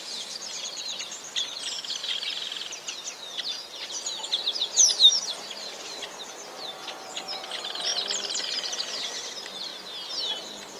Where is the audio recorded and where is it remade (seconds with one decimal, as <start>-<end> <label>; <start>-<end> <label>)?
0.0-2.0 remade; 2.0-2.8 recorded; 2.8-7.9 remade; 7.9-9.0 recorded; 9.0-9.7 remade; 9.7-10.4 recorded; 10.4-10.8 remade